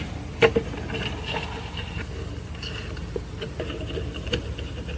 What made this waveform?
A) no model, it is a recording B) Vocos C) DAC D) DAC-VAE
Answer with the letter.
A